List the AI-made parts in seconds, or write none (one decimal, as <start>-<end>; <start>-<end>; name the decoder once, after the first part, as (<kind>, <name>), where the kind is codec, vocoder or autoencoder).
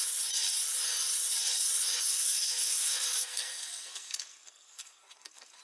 2.1-5.6 (codec, SNAC)